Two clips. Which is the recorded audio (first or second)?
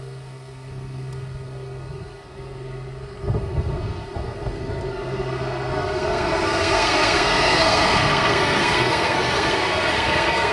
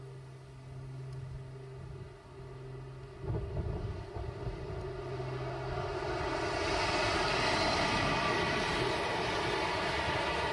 second